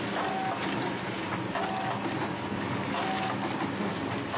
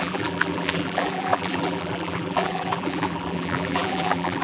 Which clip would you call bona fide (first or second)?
first